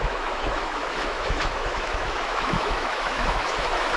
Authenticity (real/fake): fake